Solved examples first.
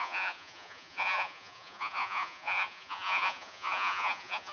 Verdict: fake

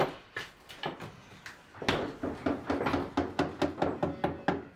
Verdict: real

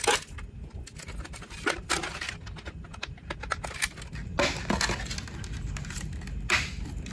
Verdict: real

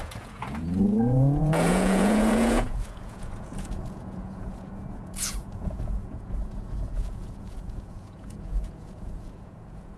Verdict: fake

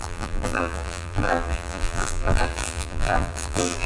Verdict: fake